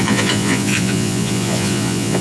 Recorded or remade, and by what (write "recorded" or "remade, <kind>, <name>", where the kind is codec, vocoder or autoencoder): remade, vocoder, Vocos